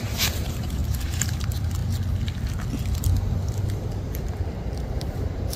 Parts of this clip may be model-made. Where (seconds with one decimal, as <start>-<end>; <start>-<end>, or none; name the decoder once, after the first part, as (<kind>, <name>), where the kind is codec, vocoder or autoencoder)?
0.0-1.8 (vocoder, BigVGAN v2); 5.0-5.6